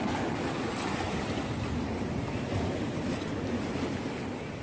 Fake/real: real